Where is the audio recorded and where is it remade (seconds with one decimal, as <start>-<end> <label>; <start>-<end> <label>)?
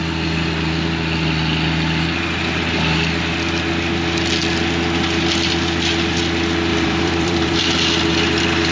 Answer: 0.0-6.7 recorded; 6.7-7.6 remade; 7.6-8.7 recorded